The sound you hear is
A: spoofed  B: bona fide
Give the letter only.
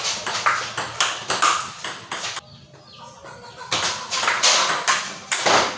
B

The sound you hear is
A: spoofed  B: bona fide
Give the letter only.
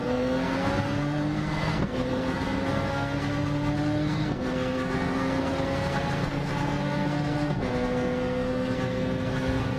A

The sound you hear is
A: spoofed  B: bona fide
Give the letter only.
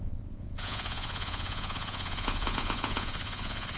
A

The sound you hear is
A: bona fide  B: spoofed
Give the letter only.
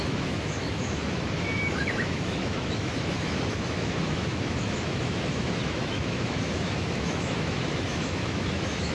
B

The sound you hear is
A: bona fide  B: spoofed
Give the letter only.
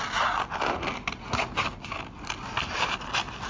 A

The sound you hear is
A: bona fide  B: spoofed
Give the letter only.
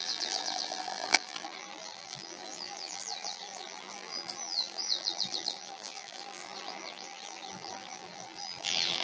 B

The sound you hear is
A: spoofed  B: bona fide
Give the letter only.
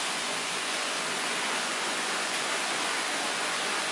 A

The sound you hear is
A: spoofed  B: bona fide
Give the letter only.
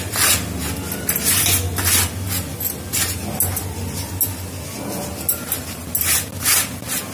B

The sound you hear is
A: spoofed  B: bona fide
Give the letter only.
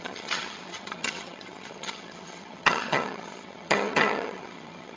A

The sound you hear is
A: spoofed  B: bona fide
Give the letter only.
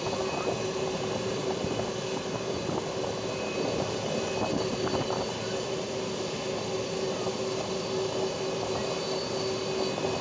A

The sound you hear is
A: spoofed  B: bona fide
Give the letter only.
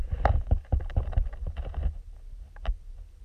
B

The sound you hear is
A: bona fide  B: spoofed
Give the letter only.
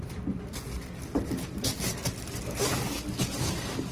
A